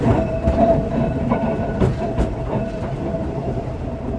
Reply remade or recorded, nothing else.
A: remade